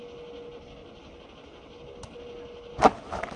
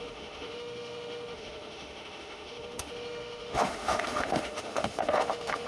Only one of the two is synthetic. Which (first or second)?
second